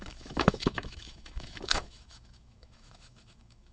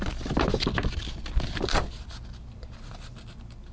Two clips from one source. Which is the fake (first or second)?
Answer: first